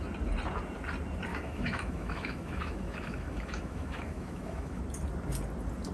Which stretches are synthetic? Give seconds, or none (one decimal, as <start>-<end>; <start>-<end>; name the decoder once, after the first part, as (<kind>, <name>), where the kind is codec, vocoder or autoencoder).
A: 1.3-4.8 (autoencoder, DAC-VAE)